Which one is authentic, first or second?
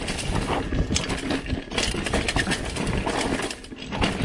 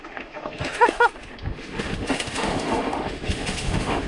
first